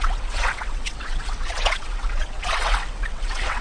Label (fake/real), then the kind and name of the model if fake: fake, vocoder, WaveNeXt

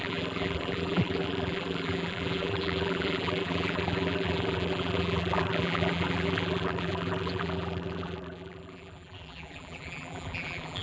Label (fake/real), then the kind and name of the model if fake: fake, vocoder, BigVGAN v2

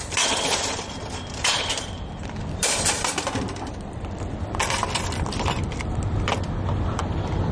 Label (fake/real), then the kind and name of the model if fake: fake, vocoder, BigVGAN v2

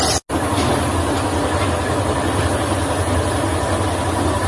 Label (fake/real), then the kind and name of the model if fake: real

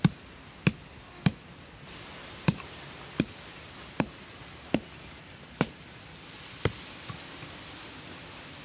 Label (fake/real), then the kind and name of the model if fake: real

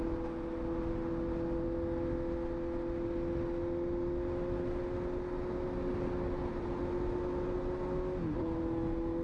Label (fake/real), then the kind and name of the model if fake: real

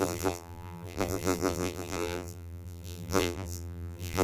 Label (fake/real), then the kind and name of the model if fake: fake, vocoder, BigVGAN v2